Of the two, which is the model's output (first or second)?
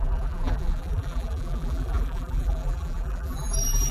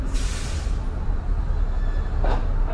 first